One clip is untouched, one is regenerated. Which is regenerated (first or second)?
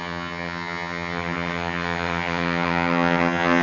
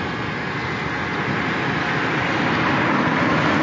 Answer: first